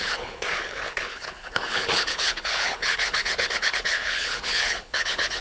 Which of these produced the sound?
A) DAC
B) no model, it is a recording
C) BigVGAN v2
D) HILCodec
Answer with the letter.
D